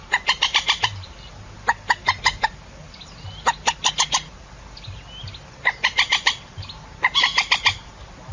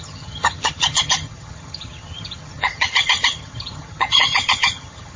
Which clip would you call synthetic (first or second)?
second